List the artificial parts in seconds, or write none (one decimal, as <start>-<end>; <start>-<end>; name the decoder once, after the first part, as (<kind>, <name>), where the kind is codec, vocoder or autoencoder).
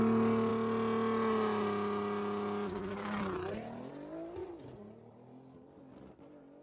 none